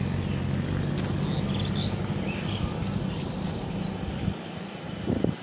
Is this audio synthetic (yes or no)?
no